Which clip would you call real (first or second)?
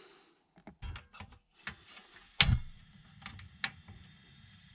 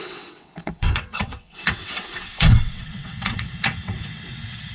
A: first